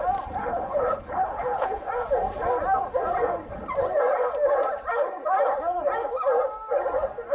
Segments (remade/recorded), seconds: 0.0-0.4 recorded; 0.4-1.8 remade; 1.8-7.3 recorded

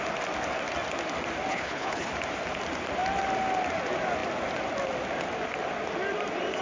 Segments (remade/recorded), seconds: 0.0-1.5 recorded; 1.5-2.1 remade; 2.1-6.6 recorded

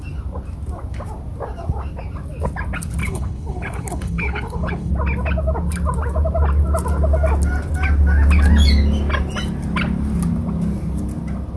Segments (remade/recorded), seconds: 0.0-3.0 recorded; 3.0-4.9 remade; 4.9-11.6 recorded

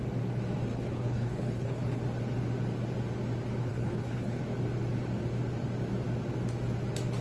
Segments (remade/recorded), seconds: 0.0-0.7 recorded; 0.7-2.0 remade; 2.0-3.7 recorded; 3.7-4.4 remade; 4.4-7.2 recorded

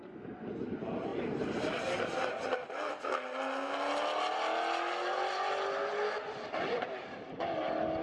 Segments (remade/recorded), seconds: 0.0-8.0 recorded

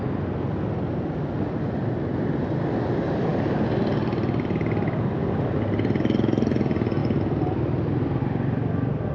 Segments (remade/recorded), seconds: 0.0-9.1 recorded